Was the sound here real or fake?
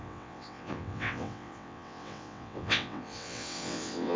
fake